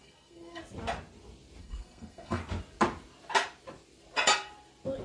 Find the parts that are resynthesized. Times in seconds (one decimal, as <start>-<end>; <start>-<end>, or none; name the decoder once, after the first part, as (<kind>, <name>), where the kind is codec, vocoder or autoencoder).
0.0-0.6 (codec, SNAC); 1.6-2.4